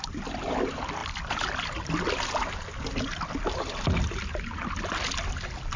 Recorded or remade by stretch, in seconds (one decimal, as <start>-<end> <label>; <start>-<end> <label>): 0.0-5.8 recorded